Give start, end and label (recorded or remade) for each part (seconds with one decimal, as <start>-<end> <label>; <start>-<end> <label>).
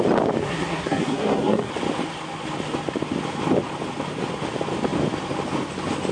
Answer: 0.0-0.4 recorded; 0.4-1.7 remade; 1.7-6.1 recorded